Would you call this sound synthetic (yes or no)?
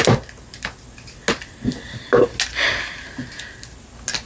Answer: no